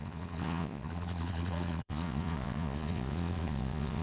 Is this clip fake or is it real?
fake